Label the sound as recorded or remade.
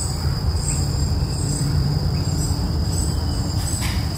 remade